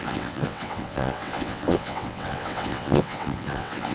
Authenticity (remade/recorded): remade